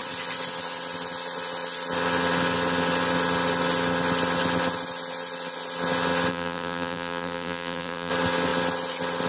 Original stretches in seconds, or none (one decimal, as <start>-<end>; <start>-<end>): 0.0-6.3; 8.1-9.3